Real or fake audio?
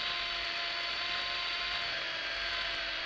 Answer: real